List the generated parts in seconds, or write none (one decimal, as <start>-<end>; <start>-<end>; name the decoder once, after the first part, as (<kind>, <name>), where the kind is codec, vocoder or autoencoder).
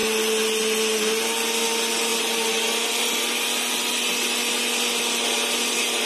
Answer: none